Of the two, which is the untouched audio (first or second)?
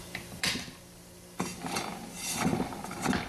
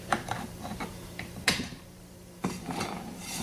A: first